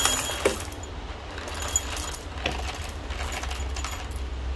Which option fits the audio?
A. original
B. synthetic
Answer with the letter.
A